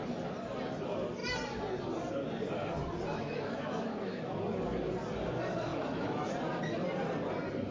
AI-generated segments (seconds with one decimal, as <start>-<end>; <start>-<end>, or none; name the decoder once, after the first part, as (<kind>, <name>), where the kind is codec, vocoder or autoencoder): 3.1-4.3 (autoencoder, DAC-VAE); 5.7-6.3